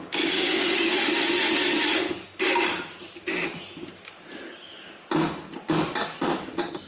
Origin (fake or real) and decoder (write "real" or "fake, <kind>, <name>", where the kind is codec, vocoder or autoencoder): real